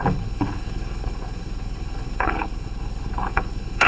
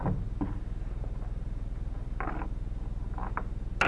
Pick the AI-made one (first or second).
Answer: first